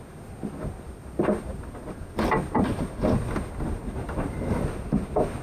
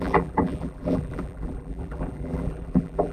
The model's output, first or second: second